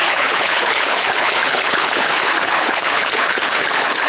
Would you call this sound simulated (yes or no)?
yes